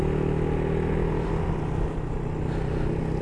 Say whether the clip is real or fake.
real